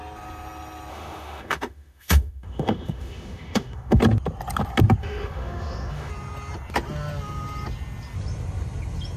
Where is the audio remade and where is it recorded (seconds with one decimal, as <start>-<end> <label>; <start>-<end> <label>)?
0.0-0.9 recorded; 0.9-4.0 remade; 4.0-5.0 recorded; 5.0-6.1 remade; 6.1-9.2 recorded